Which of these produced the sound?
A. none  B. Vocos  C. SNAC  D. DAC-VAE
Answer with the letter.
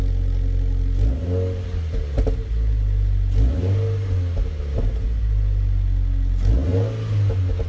A